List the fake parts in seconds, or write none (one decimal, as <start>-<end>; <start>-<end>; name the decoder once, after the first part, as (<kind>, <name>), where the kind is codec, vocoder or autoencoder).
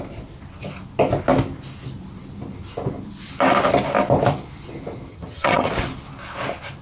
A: 5.1-5.7 (vocoder, HiFi-GAN)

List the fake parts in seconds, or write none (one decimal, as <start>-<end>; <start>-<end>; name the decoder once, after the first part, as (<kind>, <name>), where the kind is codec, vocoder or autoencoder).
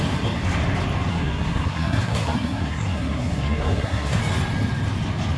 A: 1.1-4.2 (codec, SNAC)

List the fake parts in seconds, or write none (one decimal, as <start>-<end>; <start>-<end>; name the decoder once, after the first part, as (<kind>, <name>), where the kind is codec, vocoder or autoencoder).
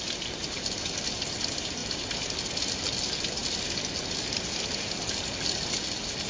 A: none